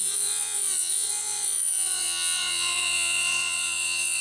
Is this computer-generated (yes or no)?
yes